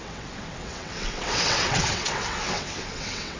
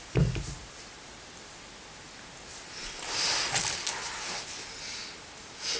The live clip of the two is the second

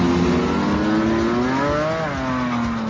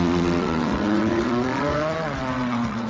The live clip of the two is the first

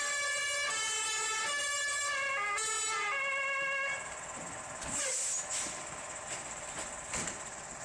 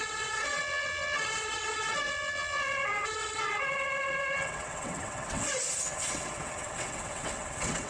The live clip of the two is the first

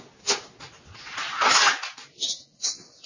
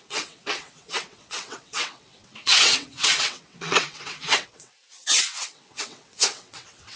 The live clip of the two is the first